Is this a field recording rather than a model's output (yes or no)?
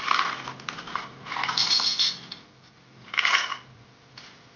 no